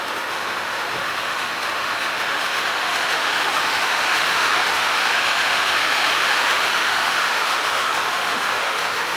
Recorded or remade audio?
remade